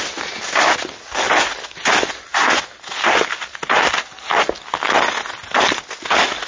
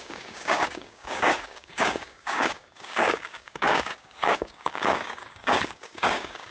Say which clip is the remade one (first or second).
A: second